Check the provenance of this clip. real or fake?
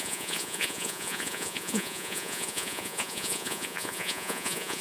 fake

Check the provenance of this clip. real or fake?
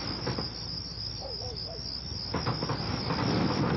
real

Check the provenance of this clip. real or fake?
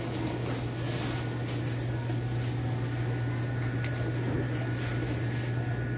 real